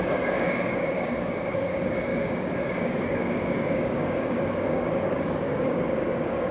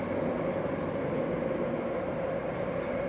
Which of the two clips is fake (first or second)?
first